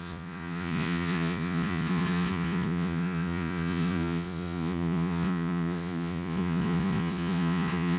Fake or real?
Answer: fake